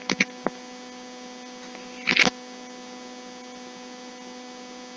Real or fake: real